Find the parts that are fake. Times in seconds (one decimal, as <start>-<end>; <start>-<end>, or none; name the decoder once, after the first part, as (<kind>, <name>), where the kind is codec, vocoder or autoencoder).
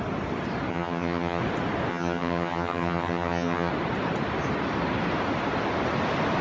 0.7-1.4 (vocoder, HiFi-GAN); 1.9-3.7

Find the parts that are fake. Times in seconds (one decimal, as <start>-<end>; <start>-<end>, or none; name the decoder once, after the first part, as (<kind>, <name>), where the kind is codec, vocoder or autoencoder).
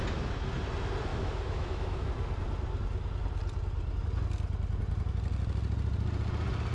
1.1-2.1 (autoencoder, DAC-VAE)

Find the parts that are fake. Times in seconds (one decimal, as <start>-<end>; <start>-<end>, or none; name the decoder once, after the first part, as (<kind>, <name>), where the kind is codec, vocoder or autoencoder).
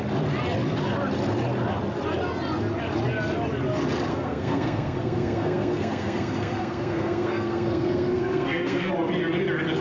4.1-8.9 (codec, SNAC)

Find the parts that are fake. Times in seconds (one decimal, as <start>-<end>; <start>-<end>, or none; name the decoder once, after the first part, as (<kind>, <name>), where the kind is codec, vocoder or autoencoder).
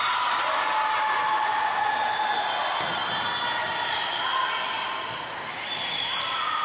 none